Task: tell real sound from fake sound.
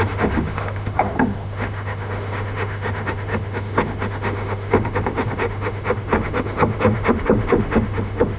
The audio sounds fake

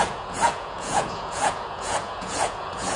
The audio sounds fake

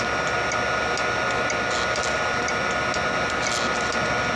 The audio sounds real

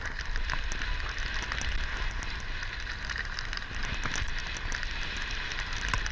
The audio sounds real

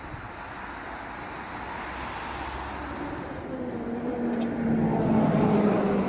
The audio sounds real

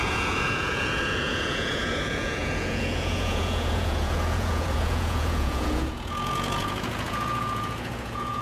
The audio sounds fake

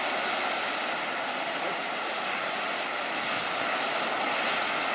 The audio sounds real